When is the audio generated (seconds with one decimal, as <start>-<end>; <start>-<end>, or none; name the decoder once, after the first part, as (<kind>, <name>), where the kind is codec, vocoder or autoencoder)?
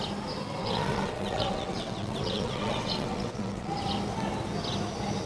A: 0.6-3.8 (vocoder, WaveNeXt)